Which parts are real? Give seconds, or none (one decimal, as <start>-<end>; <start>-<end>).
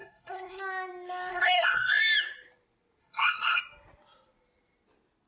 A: 0.6-1.3; 2.0-3.0; 3.6-5.3